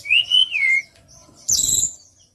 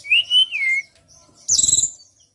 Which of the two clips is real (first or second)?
second